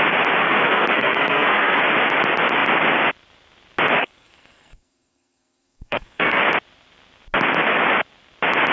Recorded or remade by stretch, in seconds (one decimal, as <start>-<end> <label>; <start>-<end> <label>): 0.0-0.4 recorded; 0.4-1.8 remade; 1.8-4.0 recorded; 4.0-6.4 remade; 6.4-8.7 recorded